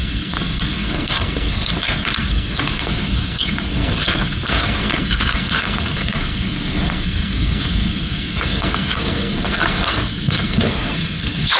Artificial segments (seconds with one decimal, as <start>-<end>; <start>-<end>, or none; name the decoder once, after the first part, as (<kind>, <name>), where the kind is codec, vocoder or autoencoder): 0.0-11.6 (codec, SNAC)